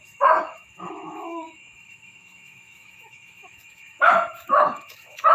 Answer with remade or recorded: remade